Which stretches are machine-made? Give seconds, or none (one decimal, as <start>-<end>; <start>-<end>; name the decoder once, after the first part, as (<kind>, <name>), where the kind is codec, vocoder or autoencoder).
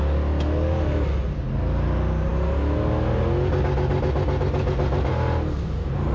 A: none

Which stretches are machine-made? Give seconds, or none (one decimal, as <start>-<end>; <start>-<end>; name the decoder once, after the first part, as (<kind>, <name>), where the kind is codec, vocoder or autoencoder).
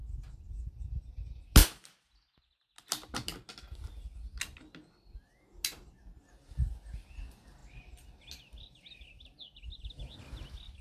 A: none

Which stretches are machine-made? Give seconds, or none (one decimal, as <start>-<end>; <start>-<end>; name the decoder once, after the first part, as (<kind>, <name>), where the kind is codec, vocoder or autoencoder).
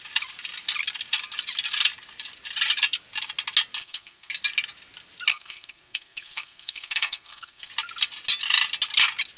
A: 3.8-4.3 (codec, SNAC); 5.3-7.7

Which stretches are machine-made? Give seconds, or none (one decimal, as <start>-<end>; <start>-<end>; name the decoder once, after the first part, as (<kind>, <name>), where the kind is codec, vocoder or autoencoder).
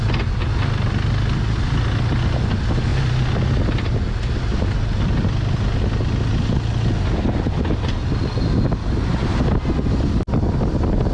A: none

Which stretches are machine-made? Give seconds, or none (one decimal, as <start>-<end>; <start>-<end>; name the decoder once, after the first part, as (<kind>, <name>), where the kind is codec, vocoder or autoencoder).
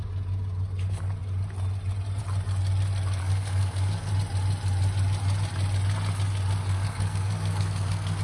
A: 3.2-4.1 (codec, SNAC); 6.6-8.2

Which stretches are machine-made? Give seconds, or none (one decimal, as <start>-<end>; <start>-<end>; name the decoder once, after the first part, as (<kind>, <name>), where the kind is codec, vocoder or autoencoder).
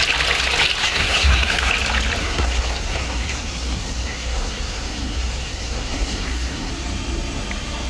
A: 0.8-1.7 (codec, SNAC); 2.2-6.7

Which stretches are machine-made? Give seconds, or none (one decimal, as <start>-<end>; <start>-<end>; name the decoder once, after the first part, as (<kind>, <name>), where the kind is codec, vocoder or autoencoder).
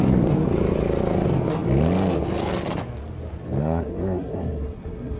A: 3.6-5.2 (codec, SNAC)